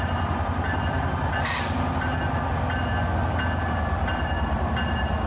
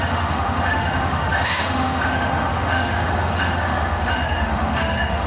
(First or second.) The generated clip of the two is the second